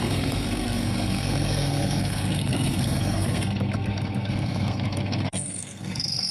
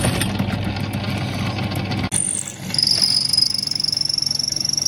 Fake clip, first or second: first